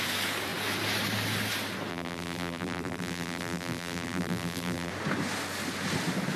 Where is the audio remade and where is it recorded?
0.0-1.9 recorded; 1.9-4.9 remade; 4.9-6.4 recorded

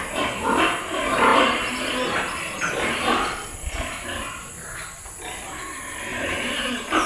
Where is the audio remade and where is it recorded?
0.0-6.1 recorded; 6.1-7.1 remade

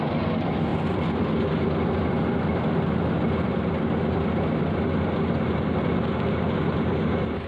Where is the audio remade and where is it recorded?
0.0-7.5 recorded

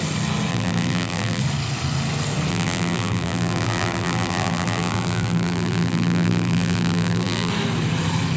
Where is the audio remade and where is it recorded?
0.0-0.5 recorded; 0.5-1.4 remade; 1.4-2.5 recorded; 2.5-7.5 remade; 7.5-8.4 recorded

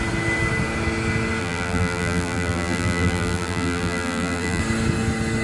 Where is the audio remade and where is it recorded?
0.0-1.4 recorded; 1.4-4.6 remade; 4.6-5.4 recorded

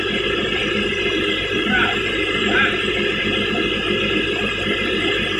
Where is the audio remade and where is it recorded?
0.0-5.4 recorded